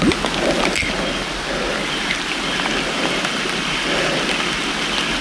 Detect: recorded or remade recorded